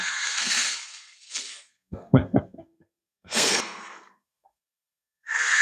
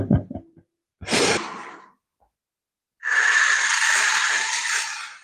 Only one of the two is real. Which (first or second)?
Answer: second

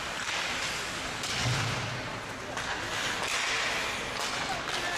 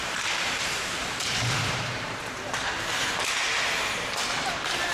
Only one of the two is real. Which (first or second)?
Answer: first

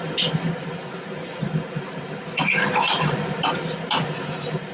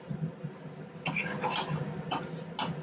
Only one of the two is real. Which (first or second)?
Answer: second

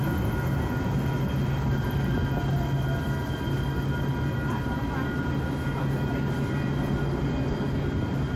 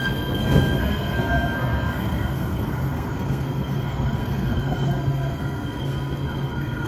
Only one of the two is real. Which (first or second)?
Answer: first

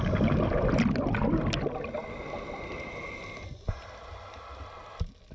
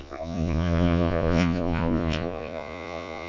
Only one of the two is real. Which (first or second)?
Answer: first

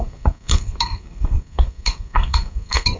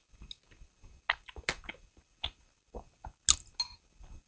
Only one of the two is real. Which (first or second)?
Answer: second